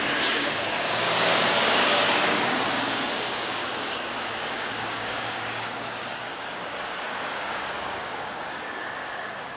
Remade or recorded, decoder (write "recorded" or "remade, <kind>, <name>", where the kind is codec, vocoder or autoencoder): remade, codec, DAC